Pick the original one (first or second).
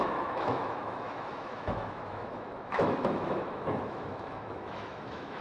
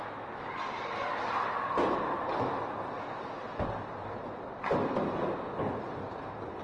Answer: second